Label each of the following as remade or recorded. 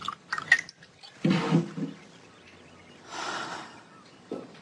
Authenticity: recorded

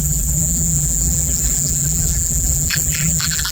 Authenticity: remade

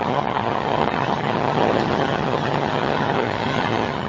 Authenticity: remade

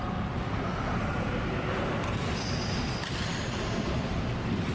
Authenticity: recorded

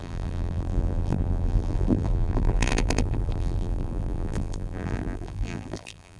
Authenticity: remade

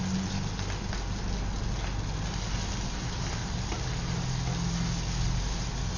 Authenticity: recorded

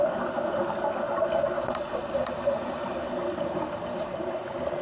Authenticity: recorded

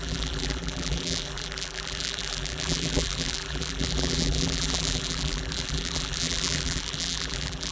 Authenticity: remade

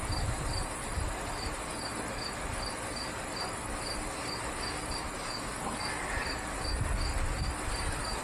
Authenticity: recorded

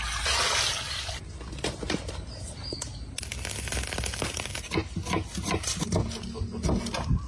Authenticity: recorded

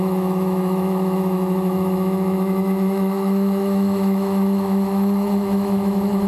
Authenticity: remade